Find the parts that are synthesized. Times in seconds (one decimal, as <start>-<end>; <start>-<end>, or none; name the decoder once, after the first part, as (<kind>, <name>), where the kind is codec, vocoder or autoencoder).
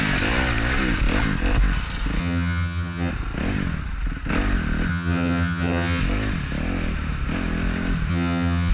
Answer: 2.2-3.1 (vocoder, HiFi-GAN); 4.9-6.0; 8.1-8.7